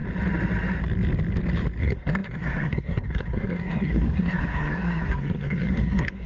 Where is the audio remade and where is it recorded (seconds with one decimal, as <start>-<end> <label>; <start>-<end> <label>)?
0.0-1.8 recorded; 1.8-6.3 remade